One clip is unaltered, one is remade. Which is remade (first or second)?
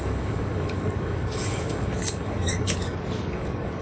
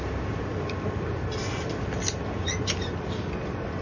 first